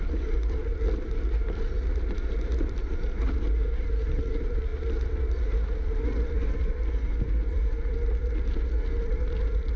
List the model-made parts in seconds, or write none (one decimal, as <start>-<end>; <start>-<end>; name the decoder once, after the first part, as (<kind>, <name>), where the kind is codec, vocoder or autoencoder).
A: none